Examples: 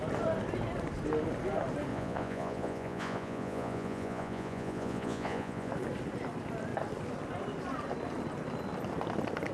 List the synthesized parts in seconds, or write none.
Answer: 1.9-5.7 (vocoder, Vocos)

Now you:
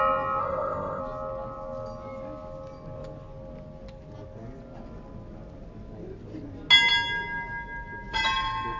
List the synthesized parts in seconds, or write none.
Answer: 0.4-1.0 (codec, ZipCodec)

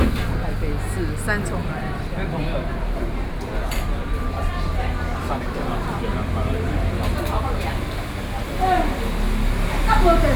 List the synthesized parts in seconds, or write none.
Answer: 1.6-4.9 (vocoder, BigVGAN v2); 6.1-7.4

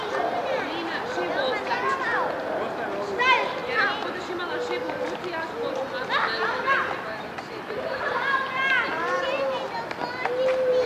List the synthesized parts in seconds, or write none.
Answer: none

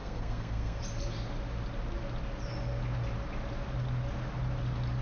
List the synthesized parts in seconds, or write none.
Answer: 0.0-0.8 (codec, SNAC)